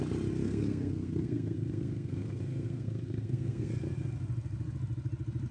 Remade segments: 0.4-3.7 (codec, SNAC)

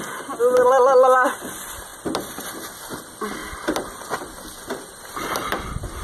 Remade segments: none

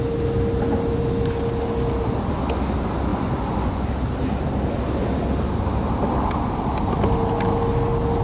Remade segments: 3.1-3.9 (vocoder, Vocos)

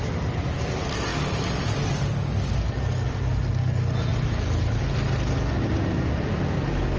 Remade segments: none